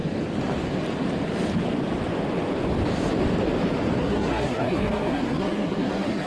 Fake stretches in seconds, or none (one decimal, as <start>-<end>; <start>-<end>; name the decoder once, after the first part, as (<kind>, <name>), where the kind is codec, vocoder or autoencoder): 4.0-6.3 (codec, SNAC)